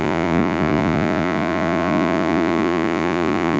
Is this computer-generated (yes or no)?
yes